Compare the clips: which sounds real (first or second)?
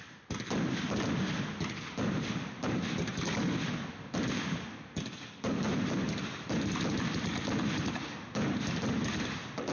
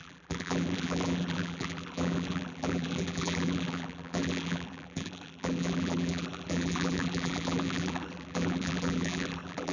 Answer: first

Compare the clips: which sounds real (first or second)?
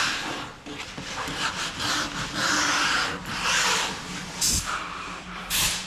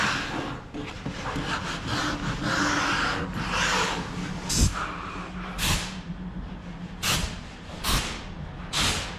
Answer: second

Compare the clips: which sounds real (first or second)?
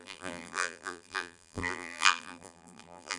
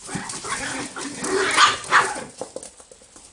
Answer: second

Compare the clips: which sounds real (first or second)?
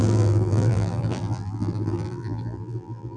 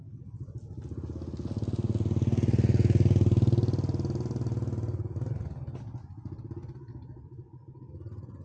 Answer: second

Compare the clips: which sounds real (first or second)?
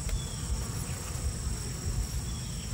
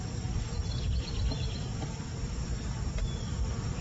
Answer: first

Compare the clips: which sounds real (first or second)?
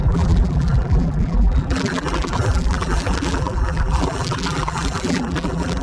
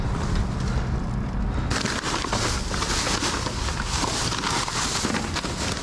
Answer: second